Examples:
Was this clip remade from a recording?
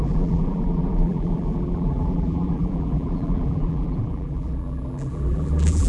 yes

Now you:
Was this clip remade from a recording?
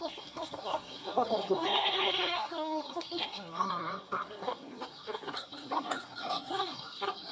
yes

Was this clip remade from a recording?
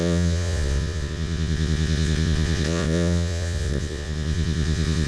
yes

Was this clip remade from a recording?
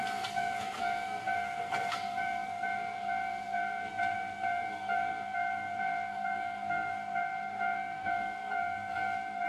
yes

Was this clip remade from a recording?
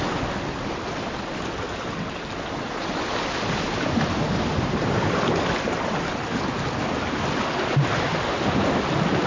no